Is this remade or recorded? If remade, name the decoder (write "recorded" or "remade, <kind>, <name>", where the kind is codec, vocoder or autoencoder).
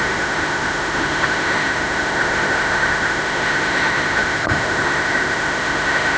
remade, autoencoder, DAC-VAE